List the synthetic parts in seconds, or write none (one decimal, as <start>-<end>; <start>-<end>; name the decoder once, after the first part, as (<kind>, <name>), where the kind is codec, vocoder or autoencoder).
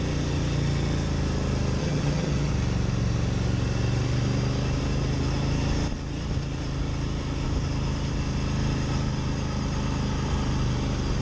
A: 1.8-2.5 (vocoder, HiFi-GAN)